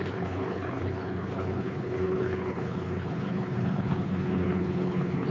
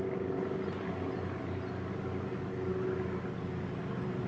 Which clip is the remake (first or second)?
first